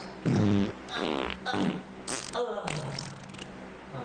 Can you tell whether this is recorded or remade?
recorded